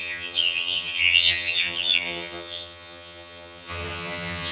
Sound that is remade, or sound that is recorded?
remade